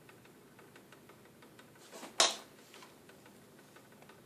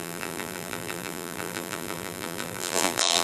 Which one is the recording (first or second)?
first